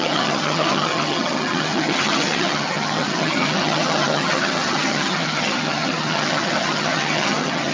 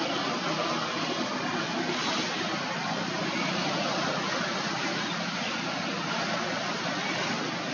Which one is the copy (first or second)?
first